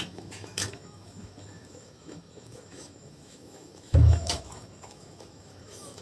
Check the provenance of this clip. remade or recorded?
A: remade